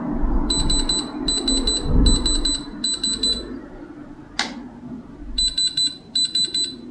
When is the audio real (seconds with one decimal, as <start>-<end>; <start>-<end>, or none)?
0.0-6.9